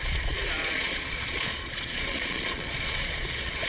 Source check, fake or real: fake